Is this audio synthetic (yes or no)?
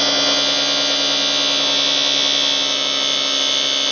no